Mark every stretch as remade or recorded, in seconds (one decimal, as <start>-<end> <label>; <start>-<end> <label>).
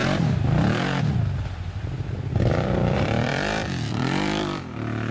0.0-5.1 remade